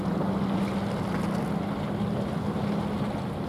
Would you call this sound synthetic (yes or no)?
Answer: no